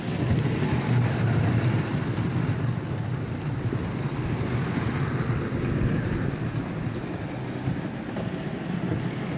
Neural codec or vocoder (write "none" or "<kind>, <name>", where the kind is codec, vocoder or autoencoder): none